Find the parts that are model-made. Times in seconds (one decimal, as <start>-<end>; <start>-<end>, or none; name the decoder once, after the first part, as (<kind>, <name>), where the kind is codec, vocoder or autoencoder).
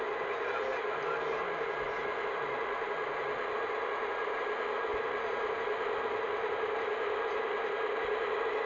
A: none